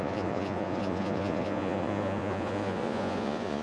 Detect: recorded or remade remade